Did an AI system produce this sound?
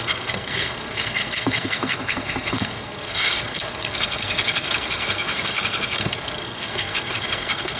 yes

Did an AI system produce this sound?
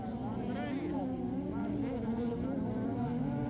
no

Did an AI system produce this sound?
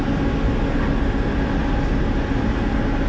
no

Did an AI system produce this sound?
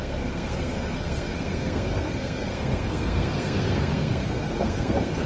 yes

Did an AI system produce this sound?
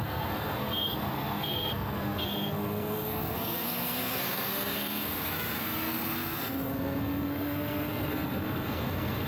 yes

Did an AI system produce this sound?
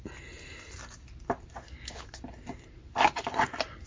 no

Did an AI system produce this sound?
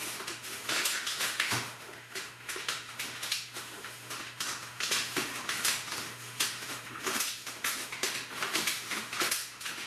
yes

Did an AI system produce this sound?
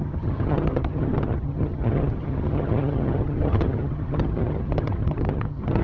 yes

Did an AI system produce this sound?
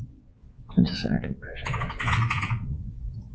yes